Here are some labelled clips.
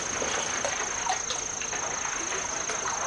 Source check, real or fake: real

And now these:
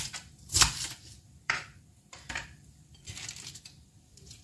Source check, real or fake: fake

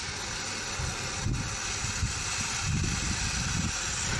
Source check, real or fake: real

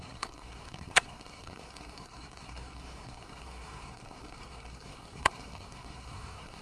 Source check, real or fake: fake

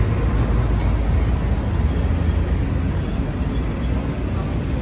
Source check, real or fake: real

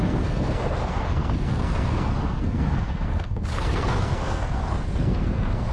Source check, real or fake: fake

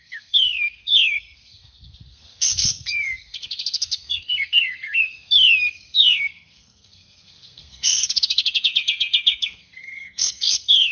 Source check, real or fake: fake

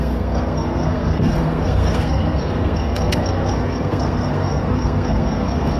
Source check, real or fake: fake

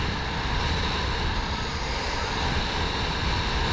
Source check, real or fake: real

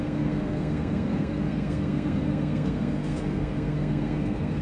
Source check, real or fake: fake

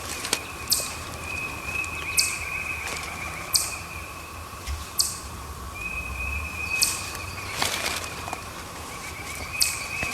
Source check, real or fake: fake